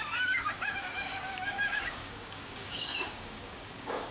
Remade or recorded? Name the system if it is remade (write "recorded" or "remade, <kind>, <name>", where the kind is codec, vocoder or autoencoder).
remade, codec, DAC